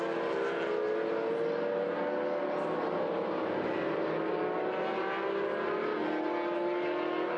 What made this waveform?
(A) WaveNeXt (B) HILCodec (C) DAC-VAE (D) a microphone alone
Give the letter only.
D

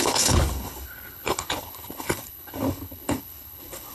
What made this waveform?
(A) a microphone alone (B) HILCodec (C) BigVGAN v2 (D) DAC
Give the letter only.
B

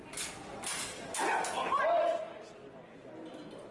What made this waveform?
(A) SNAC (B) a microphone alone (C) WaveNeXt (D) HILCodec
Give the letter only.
B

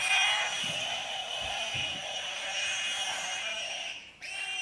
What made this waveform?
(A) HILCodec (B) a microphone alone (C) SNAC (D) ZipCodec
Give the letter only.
B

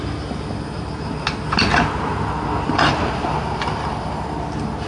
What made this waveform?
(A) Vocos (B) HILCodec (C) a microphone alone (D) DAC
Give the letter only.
C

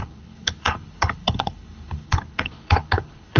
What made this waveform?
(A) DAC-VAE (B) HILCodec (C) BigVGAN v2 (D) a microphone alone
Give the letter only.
B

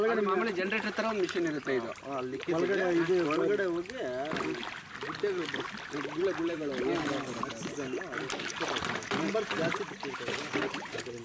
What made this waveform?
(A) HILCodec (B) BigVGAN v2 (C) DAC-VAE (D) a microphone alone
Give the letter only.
D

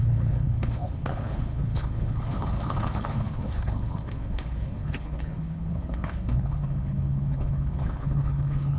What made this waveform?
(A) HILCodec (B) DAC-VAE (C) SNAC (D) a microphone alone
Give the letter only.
A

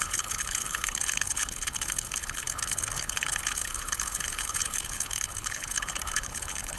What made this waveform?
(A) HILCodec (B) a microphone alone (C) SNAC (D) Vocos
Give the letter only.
A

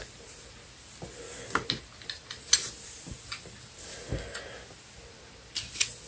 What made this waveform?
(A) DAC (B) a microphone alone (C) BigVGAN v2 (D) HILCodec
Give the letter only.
B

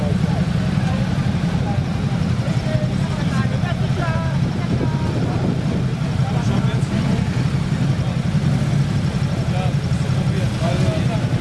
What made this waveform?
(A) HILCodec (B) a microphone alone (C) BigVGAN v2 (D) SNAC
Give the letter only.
B